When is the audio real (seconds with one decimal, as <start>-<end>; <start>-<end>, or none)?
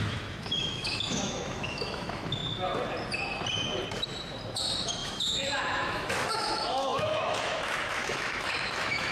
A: 2.4-4.6